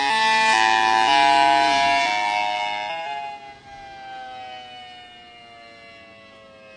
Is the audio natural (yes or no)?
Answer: yes